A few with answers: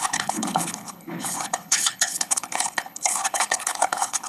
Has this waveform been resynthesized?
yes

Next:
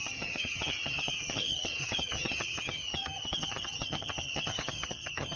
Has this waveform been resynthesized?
yes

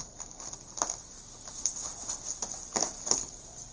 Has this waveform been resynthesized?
no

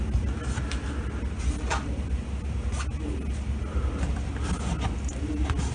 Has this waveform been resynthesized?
no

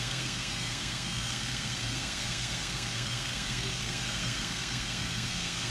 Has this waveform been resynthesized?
yes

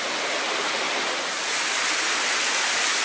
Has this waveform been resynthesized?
no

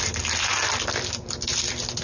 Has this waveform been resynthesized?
no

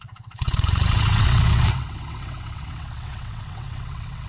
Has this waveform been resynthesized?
yes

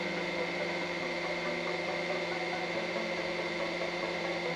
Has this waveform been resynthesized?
yes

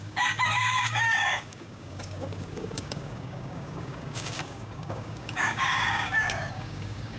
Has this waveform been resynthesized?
yes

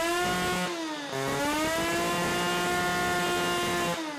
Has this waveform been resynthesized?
no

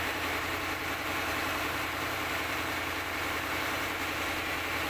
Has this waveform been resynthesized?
yes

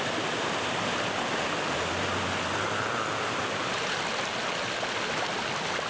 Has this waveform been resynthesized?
no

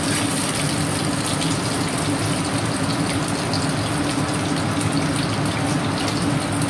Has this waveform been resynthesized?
no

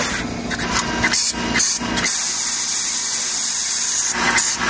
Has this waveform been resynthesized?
no